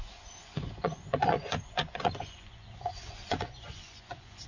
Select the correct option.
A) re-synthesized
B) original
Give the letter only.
A